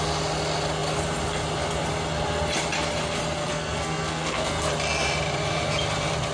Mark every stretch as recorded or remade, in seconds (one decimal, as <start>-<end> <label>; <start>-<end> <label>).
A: 0.0-3.4 recorded; 3.4-4.7 remade; 4.7-6.3 recorded